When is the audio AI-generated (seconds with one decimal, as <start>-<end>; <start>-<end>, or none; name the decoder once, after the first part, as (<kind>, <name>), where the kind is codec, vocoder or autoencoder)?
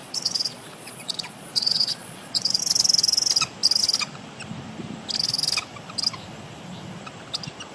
0.0-2.6 (vocoder, Vocos)